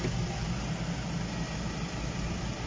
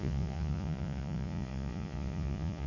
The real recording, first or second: first